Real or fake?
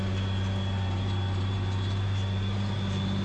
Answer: real